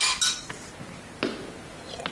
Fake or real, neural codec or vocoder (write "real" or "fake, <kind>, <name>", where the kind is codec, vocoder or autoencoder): real